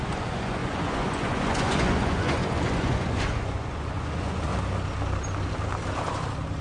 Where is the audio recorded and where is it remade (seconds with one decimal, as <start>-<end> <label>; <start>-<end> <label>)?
0.0-4.5 remade; 4.5-6.6 recorded